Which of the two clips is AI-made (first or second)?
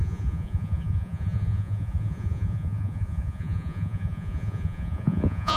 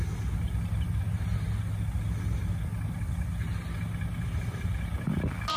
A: first